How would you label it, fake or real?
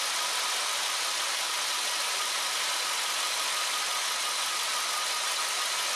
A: real